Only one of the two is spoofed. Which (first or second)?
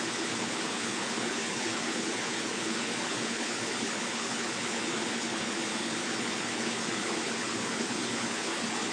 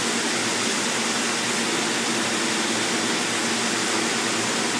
first